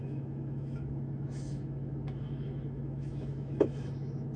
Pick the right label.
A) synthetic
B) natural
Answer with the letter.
A